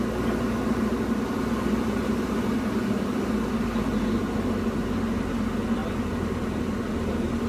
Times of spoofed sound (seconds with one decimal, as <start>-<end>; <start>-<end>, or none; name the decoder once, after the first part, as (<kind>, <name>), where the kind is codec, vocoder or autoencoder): none